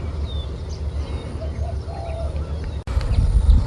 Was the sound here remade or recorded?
recorded